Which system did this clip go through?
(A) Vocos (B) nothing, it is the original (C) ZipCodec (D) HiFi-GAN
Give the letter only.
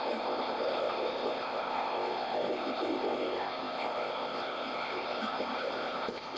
C